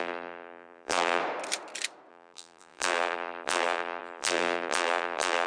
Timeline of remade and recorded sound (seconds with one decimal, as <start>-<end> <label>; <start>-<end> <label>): 0.0-1.2 remade; 1.2-2.1 recorded; 2.1-5.5 remade